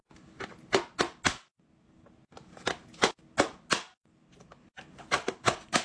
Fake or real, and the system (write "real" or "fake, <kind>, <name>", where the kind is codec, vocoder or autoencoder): real